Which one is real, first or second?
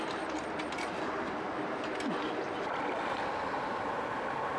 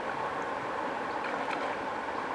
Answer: first